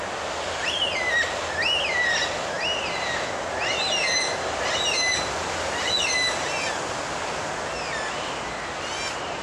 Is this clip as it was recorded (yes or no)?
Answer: yes